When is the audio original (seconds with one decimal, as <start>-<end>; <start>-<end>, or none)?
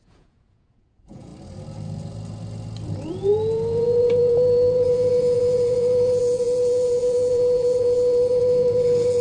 1.3-3.1